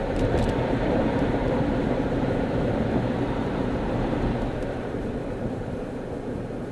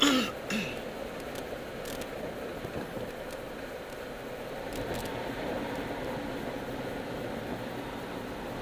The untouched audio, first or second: second